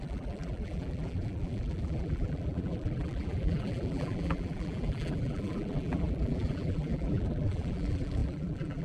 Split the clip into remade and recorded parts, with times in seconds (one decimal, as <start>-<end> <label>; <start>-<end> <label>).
0.0-8.8 remade